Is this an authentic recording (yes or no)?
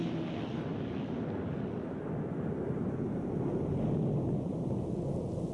yes